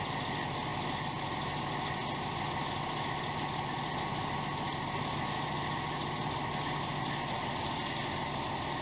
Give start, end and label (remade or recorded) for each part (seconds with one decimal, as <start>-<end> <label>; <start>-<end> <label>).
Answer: 0.0-8.8 recorded